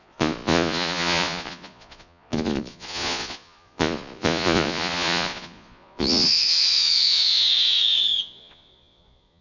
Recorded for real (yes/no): no